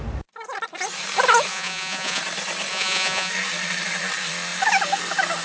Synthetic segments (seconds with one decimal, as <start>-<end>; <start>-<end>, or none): 1.5-2.2; 2.7-3.3